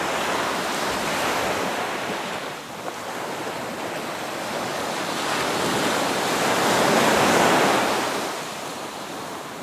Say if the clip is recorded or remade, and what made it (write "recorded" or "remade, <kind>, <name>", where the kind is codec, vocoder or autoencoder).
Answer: recorded